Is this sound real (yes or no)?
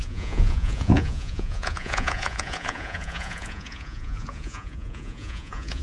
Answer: no